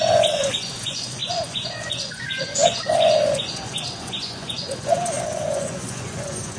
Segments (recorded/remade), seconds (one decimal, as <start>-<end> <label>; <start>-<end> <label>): 0.0-6.6 remade